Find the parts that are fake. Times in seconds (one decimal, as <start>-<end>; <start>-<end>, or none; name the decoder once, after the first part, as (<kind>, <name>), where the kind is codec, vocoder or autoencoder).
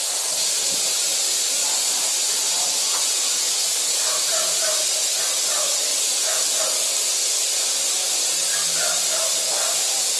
1.6-3.1 (vocoder, Vocos); 7.6-8.3